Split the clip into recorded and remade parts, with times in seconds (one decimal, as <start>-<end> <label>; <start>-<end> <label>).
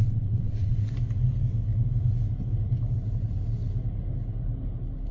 0.0-0.9 remade; 0.9-5.1 recorded